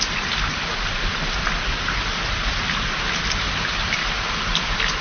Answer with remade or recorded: recorded